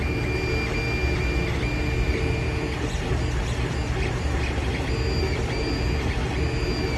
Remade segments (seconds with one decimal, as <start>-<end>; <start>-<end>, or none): none